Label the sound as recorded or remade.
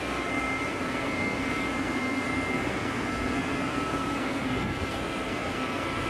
remade